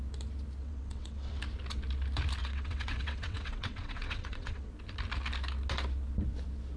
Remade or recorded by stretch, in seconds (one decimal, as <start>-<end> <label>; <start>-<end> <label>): 0.0-0.6 recorded; 0.6-1.4 remade; 1.4-2.4 recorded; 2.4-4.7 remade; 4.7-6.8 recorded